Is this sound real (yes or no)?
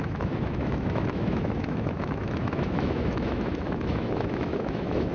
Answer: no